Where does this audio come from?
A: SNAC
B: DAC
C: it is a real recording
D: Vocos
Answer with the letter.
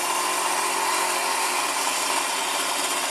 C